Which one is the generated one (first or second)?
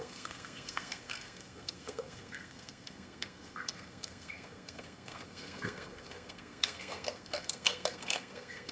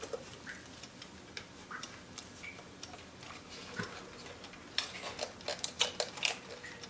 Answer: first